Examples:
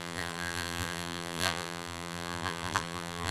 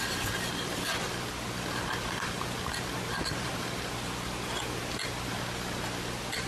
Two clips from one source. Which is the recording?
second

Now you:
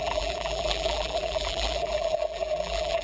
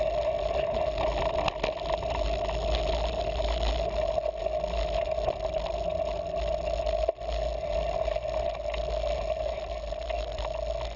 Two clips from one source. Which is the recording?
second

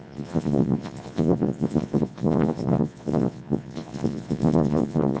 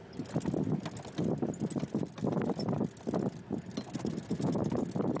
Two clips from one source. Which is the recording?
second